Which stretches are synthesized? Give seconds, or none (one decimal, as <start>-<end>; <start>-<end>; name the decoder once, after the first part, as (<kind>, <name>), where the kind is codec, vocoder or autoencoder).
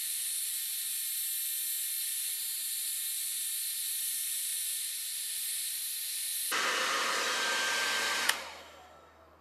none